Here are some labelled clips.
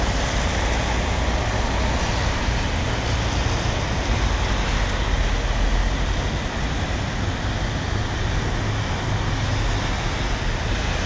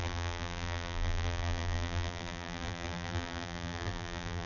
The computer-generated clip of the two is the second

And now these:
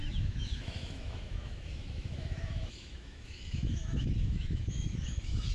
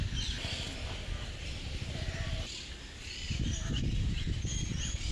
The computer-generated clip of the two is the first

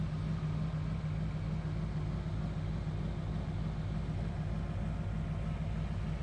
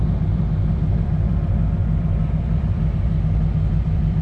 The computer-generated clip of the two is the second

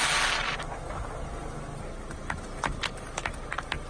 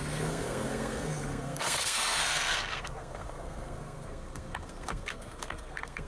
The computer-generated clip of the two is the second